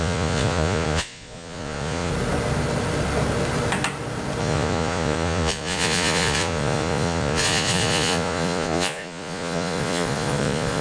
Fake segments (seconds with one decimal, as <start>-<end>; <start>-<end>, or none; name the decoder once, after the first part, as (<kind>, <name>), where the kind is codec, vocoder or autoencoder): 0.0-2.1 (vocoder, Vocos); 4.4-10.8